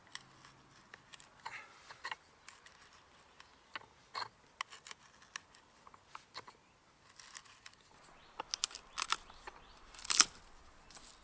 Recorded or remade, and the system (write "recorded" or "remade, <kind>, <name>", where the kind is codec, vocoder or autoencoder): recorded